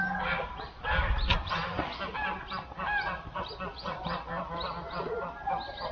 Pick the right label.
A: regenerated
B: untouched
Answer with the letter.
B